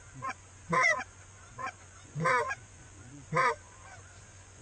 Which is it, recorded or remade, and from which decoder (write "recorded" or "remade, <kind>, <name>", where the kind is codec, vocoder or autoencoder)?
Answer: remade, vocoder, Vocos